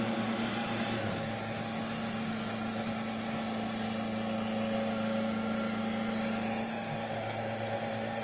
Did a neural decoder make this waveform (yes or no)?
no